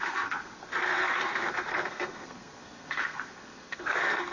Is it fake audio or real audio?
fake